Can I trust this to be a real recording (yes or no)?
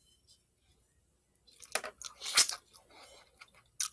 yes